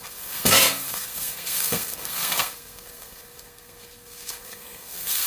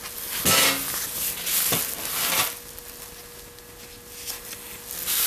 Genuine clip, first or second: second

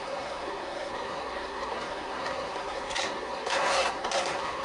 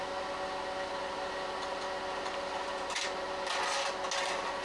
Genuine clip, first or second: second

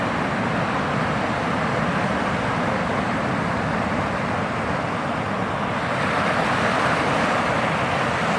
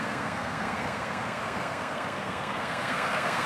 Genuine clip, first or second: first